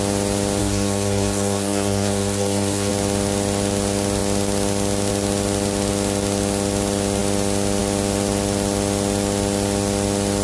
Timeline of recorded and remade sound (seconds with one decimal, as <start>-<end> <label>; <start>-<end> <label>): 0.0-0.6 recorded; 0.6-2.9 remade; 2.9-10.4 recorded